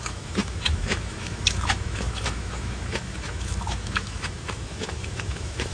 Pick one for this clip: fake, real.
fake